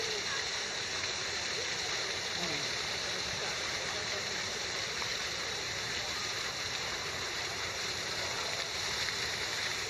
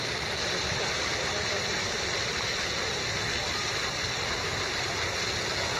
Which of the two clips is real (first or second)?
second